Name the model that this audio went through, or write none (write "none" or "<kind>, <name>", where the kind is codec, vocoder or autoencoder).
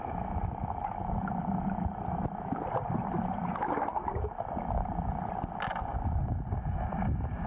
none